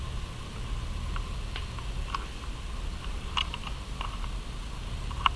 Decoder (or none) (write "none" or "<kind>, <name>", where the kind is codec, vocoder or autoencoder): none